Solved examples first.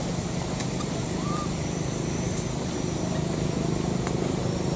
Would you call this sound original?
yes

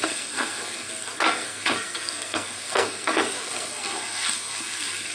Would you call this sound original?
no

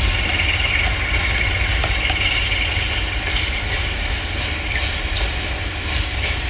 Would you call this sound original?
yes